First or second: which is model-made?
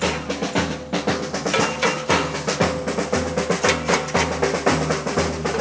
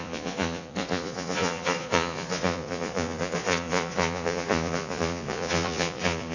second